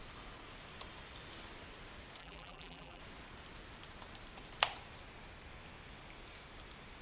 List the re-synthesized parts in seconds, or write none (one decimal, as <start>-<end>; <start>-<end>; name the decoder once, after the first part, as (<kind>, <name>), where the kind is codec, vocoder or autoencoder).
2.2-3.0 (vocoder, BigVGAN v2)